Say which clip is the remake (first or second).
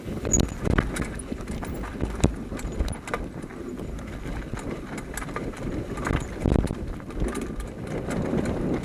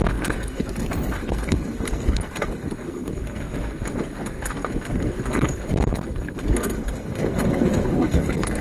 second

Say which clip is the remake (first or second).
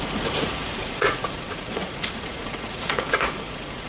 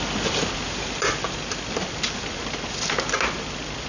first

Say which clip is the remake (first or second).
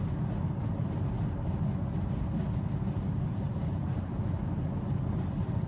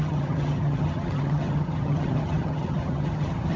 second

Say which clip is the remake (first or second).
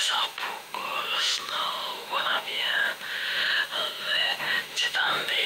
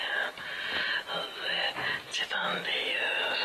first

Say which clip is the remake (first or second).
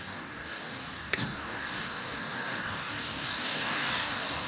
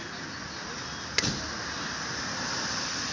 first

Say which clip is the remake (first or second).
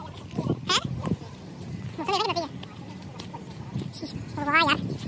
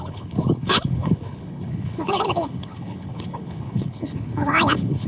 second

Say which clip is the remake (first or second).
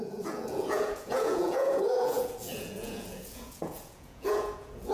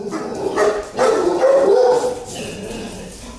first